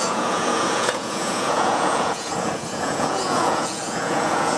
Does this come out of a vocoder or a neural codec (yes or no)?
yes